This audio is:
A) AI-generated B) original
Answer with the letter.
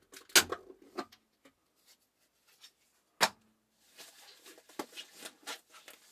B